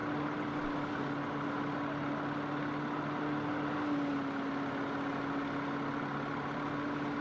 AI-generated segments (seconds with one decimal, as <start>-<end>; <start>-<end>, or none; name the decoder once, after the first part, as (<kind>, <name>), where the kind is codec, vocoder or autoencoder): none